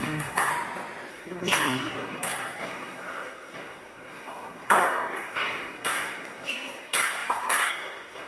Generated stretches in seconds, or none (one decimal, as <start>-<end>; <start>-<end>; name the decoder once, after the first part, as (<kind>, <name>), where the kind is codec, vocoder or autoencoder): 0.0-0.5 (codec, SNAC); 1.1-8.3